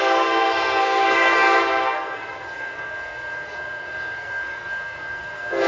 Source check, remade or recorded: remade